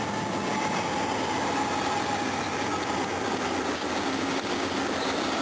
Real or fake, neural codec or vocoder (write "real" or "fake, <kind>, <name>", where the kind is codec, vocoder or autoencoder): real